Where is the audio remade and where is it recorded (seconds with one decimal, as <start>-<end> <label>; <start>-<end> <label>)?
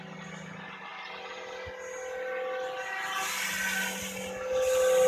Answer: 0.0-5.1 recorded